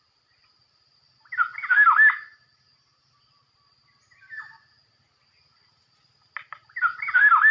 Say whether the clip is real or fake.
real